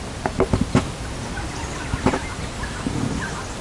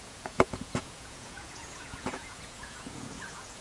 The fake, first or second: second